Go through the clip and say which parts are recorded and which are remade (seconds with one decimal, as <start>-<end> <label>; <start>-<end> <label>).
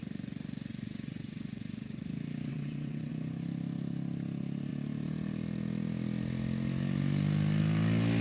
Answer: 0.0-0.7 recorded; 0.7-2.0 remade; 2.0-2.5 recorded; 2.5-3.1 remade; 3.1-8.2 recorded